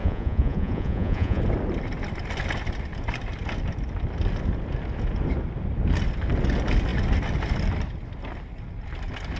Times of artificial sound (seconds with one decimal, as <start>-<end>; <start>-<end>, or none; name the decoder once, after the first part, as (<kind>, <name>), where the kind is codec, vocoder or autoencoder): 0.0-1.4 (vocoder, Vocos)